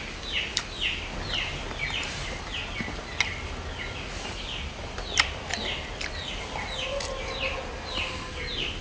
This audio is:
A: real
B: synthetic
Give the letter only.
A